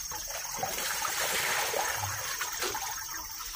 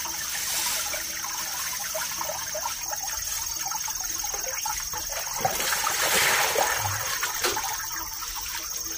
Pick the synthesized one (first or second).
first